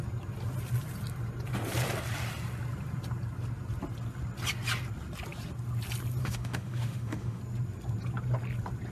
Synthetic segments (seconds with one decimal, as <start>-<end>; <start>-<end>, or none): 6.2-7.4